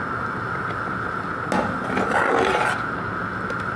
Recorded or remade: recorded